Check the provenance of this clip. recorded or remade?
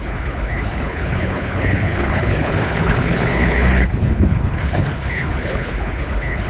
remade